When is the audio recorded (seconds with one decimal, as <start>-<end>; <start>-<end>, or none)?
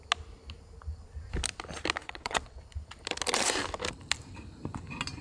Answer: 0.0-2.0; 2.6-5.2